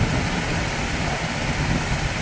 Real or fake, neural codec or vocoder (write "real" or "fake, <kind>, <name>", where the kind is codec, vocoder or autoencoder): real